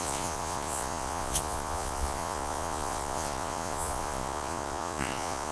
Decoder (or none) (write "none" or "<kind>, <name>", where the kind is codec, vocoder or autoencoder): vocoder, Vocos